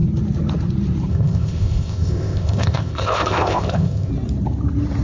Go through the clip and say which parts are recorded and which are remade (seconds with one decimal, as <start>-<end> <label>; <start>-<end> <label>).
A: 0.0-1.1 recorded; 1.1-4.1 remade; 4.1-5.0 recorded